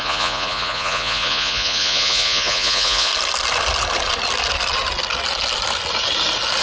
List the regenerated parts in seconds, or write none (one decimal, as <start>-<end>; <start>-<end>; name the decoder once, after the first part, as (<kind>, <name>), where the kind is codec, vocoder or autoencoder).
0.0-3.1 (vocoder, Vocos)

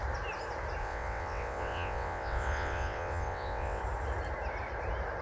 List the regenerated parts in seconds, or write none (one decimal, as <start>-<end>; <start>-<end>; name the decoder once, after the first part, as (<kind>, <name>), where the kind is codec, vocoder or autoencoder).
0.8-3.8 (vocoder, WaveNeXt)

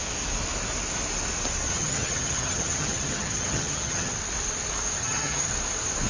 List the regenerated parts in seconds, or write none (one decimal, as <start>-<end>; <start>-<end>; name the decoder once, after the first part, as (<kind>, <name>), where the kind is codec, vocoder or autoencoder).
1.7-4.1 (vocoder, HiFi-GAN); 5.0-5.5

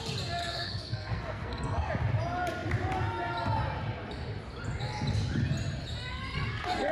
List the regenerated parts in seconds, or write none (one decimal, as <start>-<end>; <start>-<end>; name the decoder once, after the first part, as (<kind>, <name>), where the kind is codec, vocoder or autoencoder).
0.4-1.9 (codec, SNAC); 6.1-6.9